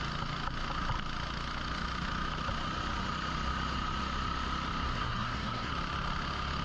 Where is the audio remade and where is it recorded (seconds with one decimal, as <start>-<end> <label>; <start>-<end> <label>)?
0.0-4.9 recorded; 4.9-5.7 remade; 5.7-6.6 recorded